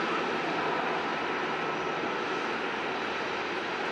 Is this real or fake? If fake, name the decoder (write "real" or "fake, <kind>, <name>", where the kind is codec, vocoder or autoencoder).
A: real